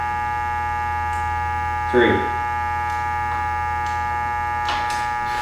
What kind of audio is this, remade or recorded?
recorded